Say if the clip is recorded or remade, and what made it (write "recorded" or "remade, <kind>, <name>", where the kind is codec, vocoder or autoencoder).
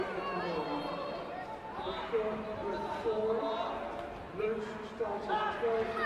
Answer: recorded